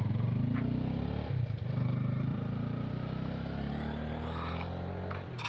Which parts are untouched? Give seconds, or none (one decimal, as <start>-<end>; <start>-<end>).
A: 0.0-2.3; 3.1-5.5